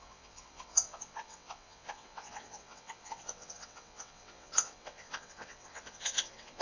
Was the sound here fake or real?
fake